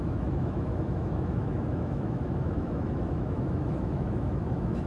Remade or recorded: remade